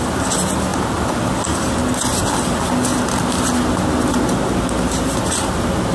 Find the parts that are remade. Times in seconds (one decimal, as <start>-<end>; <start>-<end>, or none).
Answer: none